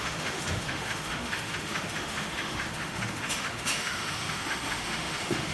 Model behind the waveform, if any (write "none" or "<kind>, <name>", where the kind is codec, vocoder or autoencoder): autoencoder, DAC-VAE